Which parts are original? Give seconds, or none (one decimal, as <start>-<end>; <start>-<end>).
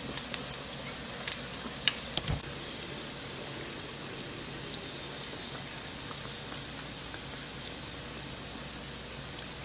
0.0-9.6